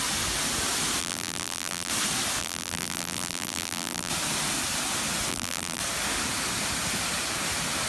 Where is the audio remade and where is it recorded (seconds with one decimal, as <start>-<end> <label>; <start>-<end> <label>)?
0.0-1.0 recorded; 1.0-1.9 remade; 1.9-2.4 recorded; 2.4-4.1 remade; 4.1-5.3 recorded; 5.3-5.8 remade; 5.8-7.9 recorded